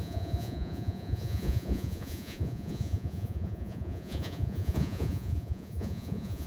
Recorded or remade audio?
remade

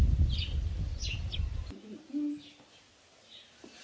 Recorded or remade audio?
recorded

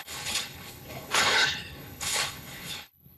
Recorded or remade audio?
remade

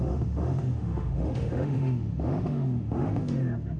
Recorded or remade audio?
remade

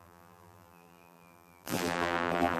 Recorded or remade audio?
remade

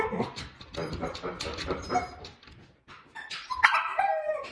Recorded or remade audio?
recorded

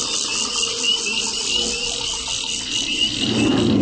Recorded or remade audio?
recorded